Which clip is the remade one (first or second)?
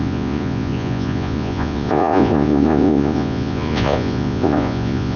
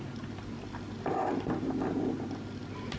first